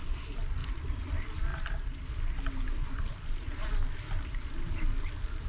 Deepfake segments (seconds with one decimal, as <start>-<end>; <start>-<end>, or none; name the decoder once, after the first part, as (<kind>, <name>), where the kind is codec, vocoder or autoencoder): 1.5-2.1 (vocoder, BigVGAN v2); 3.4-4.5